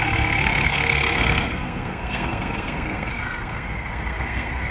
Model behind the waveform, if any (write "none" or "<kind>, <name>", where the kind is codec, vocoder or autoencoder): codec, SNAC